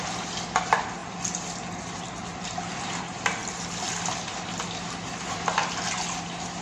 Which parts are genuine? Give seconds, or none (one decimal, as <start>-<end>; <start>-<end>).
0.0-6.6

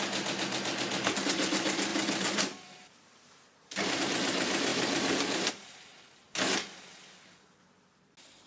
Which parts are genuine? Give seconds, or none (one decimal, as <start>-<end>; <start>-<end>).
0.0-1.9; 4.0-4.7; 5.5-8.5